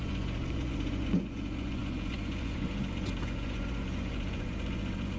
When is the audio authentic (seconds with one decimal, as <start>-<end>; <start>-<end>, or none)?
none